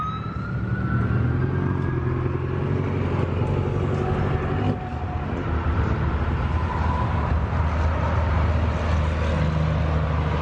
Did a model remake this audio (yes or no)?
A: no